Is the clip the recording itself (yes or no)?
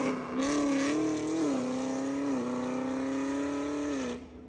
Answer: yes